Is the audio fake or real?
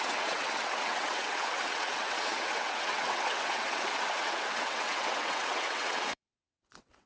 fake